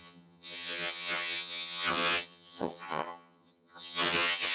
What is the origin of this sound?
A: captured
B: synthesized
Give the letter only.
B